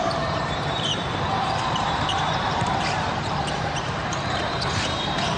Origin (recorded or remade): remade